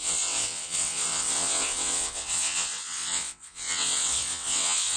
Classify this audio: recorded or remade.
remade